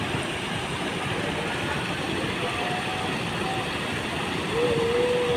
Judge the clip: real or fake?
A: real